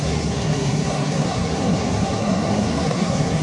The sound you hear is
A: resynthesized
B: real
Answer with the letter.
A